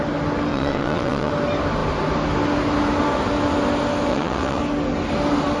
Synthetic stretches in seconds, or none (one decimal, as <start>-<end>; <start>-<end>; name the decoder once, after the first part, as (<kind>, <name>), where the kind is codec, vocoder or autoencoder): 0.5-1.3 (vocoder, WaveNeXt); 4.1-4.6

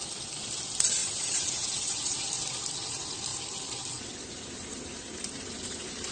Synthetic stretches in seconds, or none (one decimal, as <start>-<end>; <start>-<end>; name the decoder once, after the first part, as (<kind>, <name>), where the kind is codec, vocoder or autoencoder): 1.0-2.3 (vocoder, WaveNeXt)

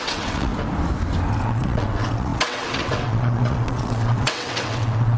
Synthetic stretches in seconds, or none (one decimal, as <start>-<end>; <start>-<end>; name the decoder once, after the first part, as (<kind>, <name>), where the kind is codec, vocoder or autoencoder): 0.0-0.5 (vocoder, WaveNeXt); 1.4-5.2

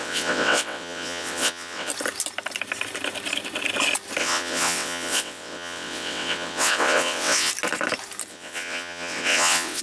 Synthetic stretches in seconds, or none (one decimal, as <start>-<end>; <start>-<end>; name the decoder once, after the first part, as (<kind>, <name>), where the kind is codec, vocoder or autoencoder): 0.0-1.9 (vocoder, WaveNeXt); 4.2-7.5; 8.3-9.8

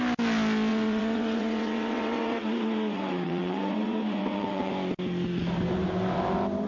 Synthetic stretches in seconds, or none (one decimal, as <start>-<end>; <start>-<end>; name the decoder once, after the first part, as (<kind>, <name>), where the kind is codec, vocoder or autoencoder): 0.7-4.7 (vocoder, WaveNeXt)

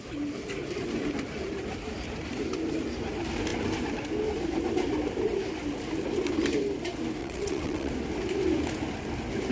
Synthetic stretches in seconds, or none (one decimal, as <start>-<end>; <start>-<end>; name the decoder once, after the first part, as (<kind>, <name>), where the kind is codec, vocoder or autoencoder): 7.2-7.9 (vocoder, WaveNeXt)

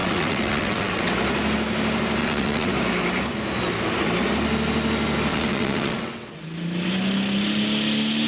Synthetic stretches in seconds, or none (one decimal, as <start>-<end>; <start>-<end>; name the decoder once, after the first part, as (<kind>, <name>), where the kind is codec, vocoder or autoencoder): 0.0-1.0 (vocoder, WaveNeXt); 2.2-2.7; 5.3-6.3

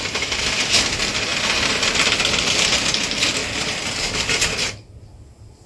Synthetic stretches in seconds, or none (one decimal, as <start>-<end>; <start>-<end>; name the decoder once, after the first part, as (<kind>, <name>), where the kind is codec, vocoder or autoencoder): none